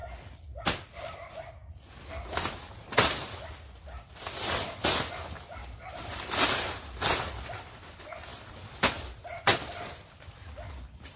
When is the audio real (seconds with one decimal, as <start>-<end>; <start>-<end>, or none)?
0.0-11.2

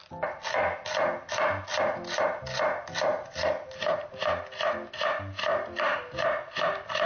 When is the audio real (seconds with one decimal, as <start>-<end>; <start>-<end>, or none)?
0.0-7.1

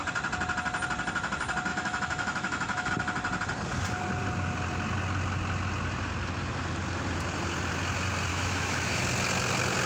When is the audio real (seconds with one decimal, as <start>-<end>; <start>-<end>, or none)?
0.0-1.7; 2.9-8.3; 9.0-9.9

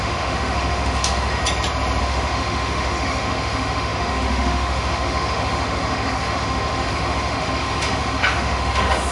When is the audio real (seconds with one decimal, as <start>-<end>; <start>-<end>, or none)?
1.4-2.0

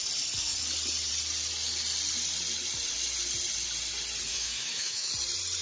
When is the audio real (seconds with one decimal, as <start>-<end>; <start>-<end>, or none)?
0.0-4.3; 5.1-5.6

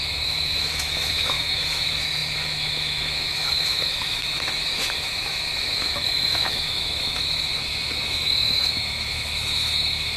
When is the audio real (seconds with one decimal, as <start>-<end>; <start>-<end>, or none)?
none

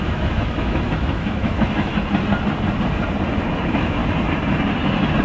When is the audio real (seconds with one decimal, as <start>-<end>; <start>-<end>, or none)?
1.9-3.6; 4.0-5.2

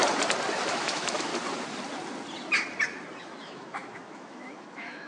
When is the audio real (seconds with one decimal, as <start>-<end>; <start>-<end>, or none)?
0.0-0.7; 1.3-3.2